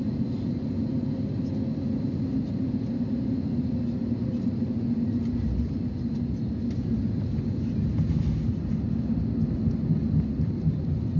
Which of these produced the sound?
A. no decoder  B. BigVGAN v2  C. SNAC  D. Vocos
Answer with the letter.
A